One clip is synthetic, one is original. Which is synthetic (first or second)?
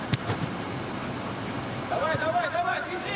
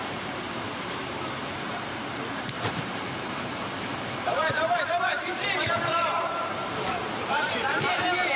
second